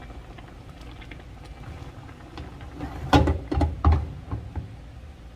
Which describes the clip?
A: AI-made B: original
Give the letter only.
B